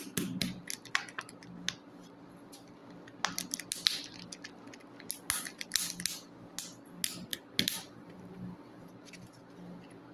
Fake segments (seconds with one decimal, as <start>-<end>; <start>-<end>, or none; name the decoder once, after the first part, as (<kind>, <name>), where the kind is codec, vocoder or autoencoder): 7.3-9.4 (vocoder, BigVGAN v2)